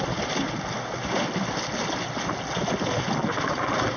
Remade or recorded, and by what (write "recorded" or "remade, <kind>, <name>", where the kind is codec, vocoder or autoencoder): recorded